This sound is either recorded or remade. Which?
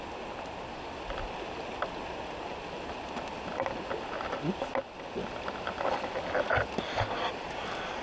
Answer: recorded